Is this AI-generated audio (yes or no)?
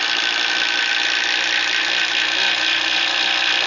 no